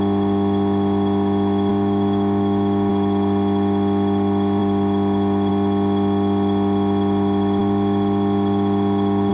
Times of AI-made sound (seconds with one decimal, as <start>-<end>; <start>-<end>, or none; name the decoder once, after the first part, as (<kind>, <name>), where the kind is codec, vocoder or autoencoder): 1.7-2.9 (autoencoder, DAC-VAE)